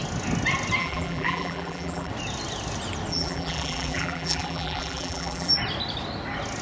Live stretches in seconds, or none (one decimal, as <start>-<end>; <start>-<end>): 0.0-0.8; 2.1-3.1; 5.5-6.6